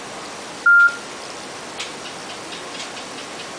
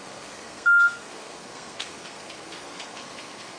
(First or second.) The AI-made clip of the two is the second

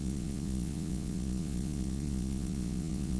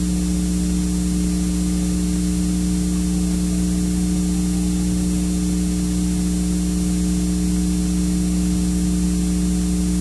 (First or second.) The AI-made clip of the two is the first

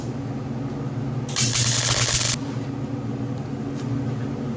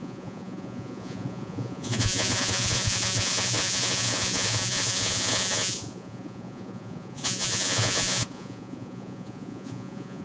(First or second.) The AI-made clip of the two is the second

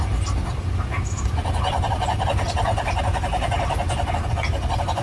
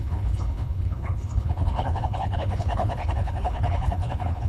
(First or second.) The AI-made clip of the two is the second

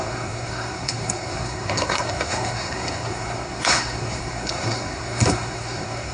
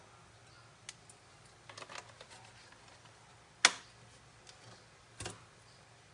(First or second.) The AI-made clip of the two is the first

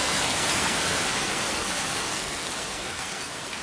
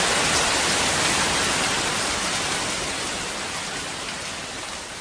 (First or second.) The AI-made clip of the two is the first